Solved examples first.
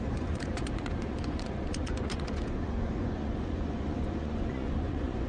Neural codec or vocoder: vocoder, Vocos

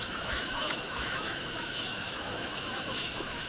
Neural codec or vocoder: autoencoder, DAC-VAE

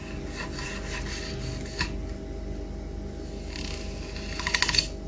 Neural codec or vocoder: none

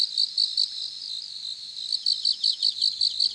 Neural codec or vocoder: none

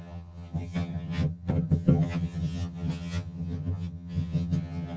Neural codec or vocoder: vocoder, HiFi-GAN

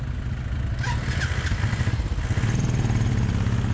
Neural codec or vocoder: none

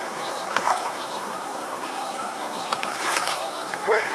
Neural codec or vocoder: codec, SNAC